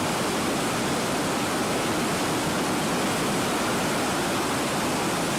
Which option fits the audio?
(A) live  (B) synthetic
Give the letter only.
A